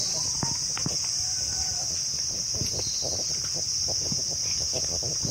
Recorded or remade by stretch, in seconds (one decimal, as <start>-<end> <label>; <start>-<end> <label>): 0.0-5.3 recorded